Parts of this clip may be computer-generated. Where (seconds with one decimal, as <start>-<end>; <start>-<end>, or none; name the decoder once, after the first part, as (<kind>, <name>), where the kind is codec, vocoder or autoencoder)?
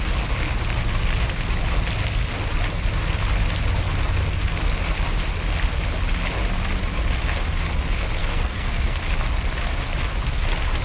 8.2-9.0 (codec, SNAC)